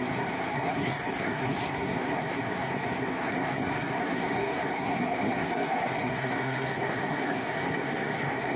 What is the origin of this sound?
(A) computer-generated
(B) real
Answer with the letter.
A